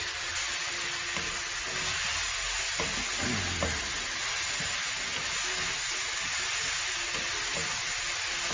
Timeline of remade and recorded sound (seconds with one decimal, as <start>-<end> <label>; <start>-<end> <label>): 0.0-8.5 recorded